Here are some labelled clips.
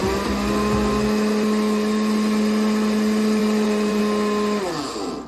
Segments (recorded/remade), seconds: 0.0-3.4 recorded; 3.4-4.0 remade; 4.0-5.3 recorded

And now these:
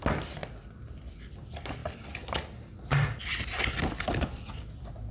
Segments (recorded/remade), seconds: 0.0-5.1 recorded

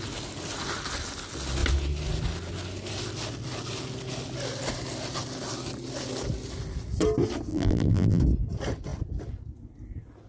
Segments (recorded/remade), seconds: 0.0-7.5 recorded; 7.5-8.2 remade; 8.2-10.3 recorded

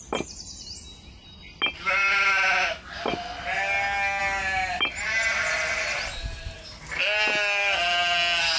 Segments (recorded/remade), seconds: 0.0-8.6 recorded

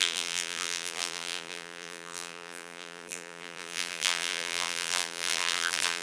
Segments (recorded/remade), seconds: 0.0-6.0 remade